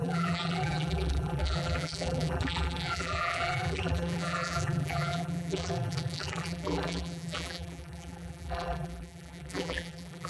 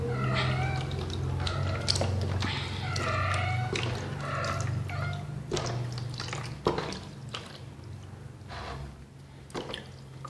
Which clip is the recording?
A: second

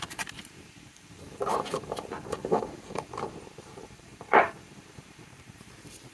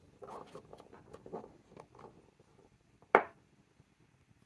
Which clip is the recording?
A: second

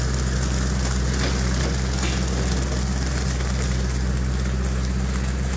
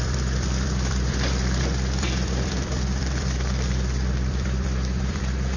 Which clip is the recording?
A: first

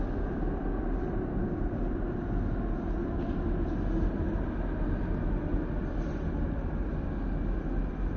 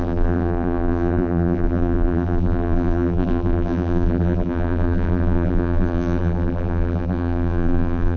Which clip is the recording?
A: first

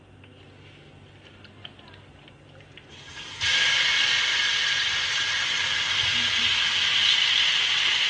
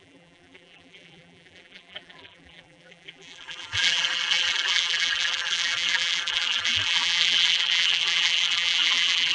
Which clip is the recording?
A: first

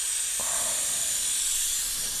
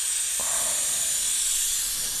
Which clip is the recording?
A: second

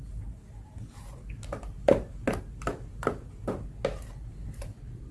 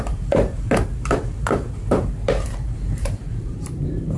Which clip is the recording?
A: first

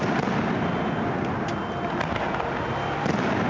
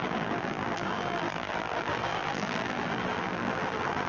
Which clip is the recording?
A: first